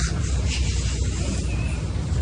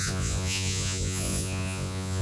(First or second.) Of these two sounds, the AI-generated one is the second